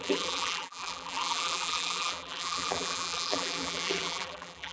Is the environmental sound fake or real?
fake